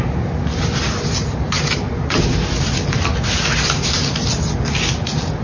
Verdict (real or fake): real